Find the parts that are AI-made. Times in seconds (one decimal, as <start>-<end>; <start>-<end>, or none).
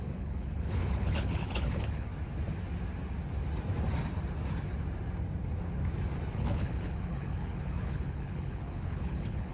0.0-2.1; 6.3-9.5